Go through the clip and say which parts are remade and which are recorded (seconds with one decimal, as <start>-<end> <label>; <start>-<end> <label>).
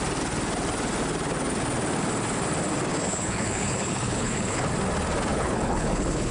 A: 0.0-3.1 recorded; 3.1-4.7 remade; 4.7-5.3 recorded; 5.3-6.3 remade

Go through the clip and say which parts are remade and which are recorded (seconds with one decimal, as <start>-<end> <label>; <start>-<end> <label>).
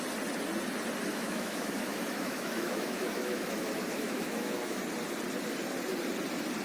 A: 0.0-1.1 recorded; 1.1-4.8 remade; 4.8-6.6 recorded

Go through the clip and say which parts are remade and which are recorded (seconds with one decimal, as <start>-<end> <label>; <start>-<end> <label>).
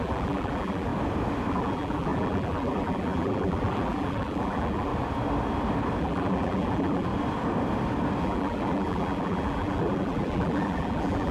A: 0.0-0.9 remade; 0.9-1.5 recorded; 1.5-4.9 remade; 4.9-6.0 recorded; 6.0-7.1 remade; 7.1-8.2 recorded; 8.2-11.3 remade